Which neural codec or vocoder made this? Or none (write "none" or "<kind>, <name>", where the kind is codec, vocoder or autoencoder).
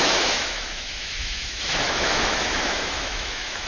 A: autoencoder, DAC-VAE